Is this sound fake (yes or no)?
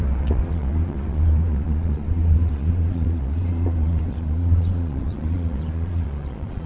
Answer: yes